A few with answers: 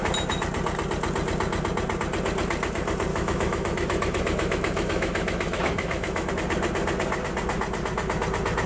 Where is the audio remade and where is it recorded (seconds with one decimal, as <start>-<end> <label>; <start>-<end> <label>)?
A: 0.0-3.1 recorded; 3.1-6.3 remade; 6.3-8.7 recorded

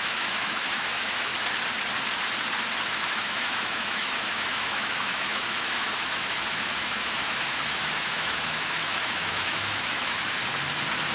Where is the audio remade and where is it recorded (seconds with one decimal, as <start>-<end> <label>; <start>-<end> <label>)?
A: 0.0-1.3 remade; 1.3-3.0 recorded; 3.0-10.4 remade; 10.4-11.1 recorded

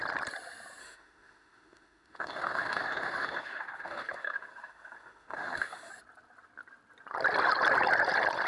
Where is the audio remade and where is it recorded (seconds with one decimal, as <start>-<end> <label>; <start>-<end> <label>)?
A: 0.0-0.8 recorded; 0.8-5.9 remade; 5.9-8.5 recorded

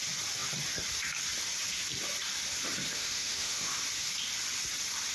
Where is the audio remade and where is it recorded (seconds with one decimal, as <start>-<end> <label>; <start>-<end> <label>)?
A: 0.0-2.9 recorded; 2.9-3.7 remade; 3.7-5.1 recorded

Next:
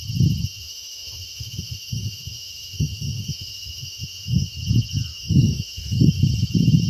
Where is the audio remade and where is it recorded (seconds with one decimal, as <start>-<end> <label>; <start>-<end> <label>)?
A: 0.0-0.5 recorded; 0.5-4.6 remade; 4.6-5.1 recorded; 5.1-6.2 remade; 6.2-6.9 recorded

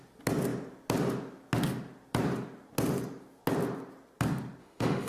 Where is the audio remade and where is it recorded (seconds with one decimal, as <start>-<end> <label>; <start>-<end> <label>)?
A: 0.0-4.6 recorded; 4.6-5.1 remade

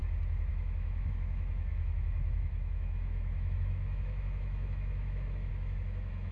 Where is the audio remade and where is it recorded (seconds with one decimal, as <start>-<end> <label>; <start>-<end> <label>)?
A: 0.0-0.5 recorded; 0.5-6.3 remade